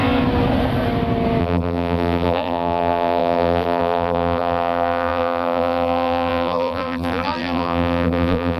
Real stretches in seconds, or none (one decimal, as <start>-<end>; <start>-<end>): 0.0-1.4